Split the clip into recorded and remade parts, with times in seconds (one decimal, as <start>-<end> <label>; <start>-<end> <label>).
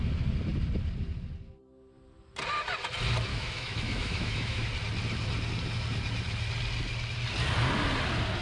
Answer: 0.0-3.3 recorded; 3.3-4.7 remade; 4.7-8.4 recorded